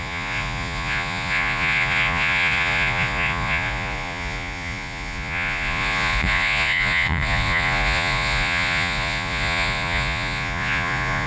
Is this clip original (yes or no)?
no